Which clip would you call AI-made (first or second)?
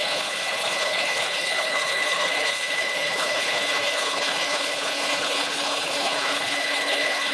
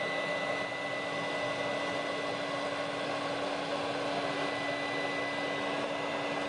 first